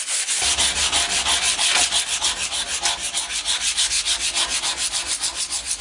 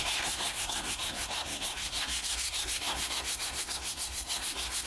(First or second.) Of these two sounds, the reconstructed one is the second